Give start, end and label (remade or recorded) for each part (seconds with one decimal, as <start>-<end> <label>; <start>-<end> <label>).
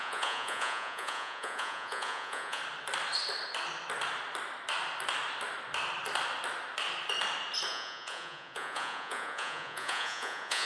0.0-2.6 remade; 2.6-7.7 recorded; 7.7-10.7 remade